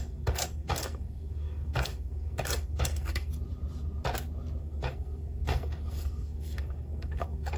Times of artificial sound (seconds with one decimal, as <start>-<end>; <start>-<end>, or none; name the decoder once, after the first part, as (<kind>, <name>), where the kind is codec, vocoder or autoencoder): 0.0-3.3 (codec, SNAC); 4.6-7.6